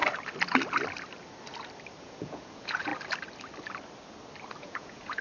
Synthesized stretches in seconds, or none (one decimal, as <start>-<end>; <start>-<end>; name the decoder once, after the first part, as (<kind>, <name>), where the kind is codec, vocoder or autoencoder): 2.0-2.9 (vocoder, Vocos); 4.6-5.2